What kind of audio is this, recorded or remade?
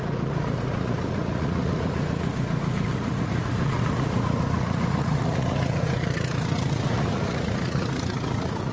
remade